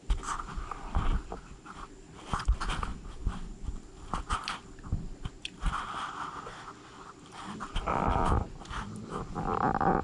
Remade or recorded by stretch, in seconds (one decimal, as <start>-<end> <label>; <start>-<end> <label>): 0.0-10.0 recorded